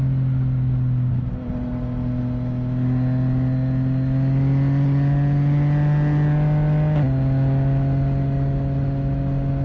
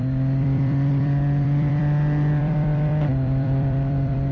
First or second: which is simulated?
second